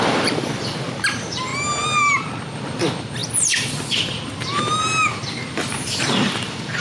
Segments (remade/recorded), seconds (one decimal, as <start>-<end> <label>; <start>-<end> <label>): 0.0-1.5 remade; 1.5-2.4 recorded; 2.4-6.8 remade